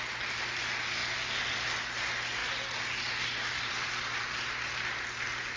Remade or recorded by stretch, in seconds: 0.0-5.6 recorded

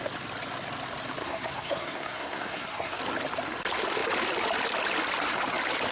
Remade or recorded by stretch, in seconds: 0.0-1.2 recorded; 1.2-3.0 remade; 3.0-5.9 recorded

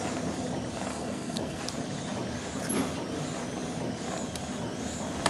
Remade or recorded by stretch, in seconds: 0.0-0.9 recorded; 0.9-1.6 remade; 1.6-5.3 recorded

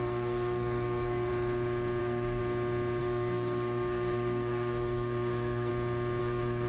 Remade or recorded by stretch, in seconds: 0.0-1.3 remade; 1.3-2.0 recorded; 2.0-2.4 remade; 2.4-3.0 recorded; 3.0-5.7 remade; 5.7-6.2 recorded; 6.2-6.7 remade